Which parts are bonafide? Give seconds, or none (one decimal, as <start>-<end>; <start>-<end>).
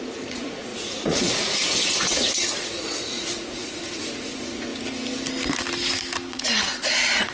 4.7-6.3